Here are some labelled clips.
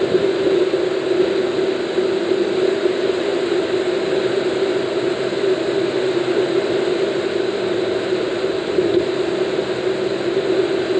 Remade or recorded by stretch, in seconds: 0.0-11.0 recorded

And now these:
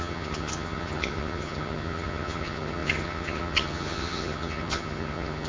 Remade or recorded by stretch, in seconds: 0.0-5.5 remade

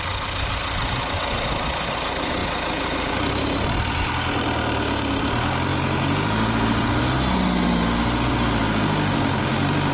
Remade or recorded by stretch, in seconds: 0.0-9.9 recorded